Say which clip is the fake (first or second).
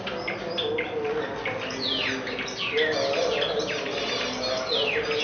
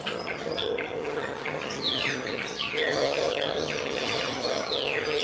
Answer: second